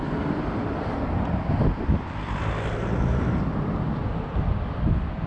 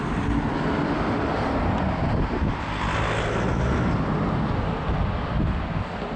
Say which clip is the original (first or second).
second